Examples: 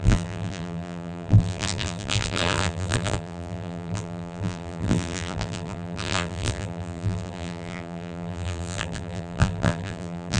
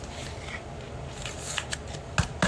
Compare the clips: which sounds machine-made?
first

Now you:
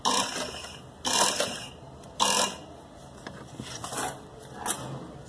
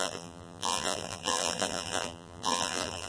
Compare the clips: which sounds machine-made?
second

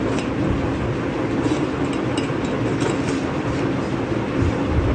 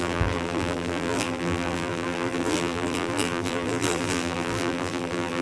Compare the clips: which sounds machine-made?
second